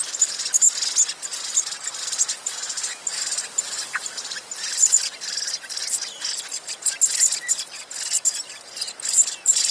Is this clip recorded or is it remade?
recorded